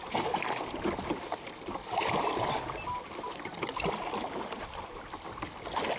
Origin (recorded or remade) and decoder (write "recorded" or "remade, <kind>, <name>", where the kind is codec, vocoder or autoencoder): recorded